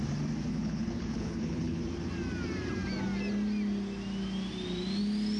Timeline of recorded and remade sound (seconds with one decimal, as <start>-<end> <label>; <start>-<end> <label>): 0.0-0.5 recorded; 0.5-1.8 remade; 1.8-5.4 recorded